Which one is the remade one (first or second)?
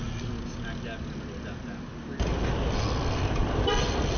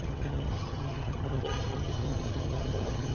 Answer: second